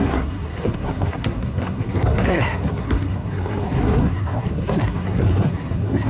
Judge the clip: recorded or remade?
remade